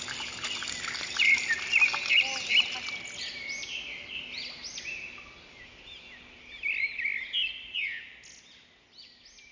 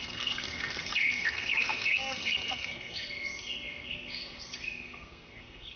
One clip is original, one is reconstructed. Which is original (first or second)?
first